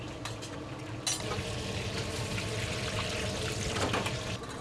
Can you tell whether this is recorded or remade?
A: recorded